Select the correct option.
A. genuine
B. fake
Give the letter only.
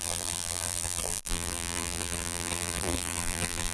B